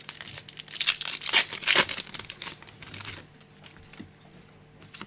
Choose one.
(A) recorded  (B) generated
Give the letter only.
A